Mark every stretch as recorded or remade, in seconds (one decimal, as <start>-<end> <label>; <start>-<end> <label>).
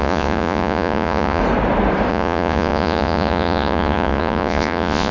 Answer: 0.0-1.4 remade; 1.4-2.1 recorded; 2.1-5.1 remade